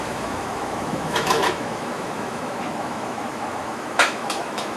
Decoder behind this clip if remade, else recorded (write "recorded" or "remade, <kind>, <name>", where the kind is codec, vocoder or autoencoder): remade, autoencoder, DAC-VAE